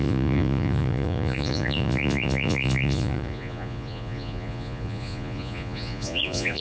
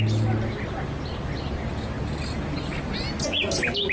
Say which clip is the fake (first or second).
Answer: first